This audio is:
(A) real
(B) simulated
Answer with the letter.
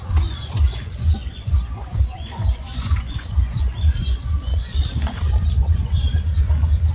B